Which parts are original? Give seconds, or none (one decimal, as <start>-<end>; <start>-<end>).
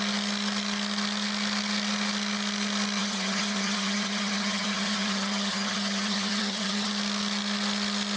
0.0-3.0; 6.9-8.2